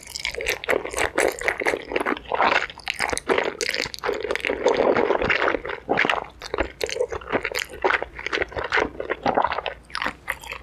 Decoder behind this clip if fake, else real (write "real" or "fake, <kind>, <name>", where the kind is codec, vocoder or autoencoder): real